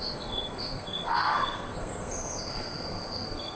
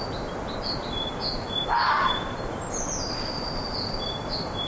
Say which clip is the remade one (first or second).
first